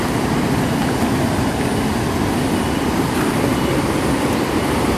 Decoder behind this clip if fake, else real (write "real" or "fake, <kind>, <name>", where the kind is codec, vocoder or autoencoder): real